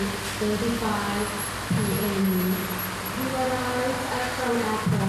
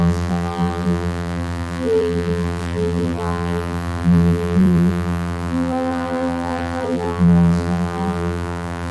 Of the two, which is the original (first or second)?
first